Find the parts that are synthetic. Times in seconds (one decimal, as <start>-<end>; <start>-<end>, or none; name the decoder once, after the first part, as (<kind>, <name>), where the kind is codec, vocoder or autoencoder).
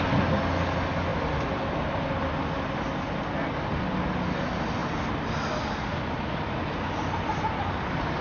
none